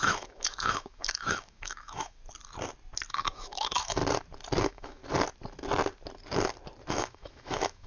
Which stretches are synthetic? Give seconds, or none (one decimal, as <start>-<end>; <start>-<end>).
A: 0.0-2.2; 3.1-4.0; 4.6-5.0; 6.9-7.9